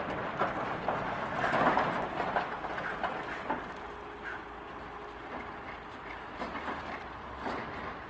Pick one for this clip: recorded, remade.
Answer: recorded